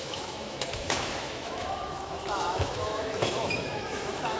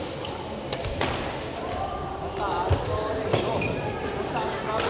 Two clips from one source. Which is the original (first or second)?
second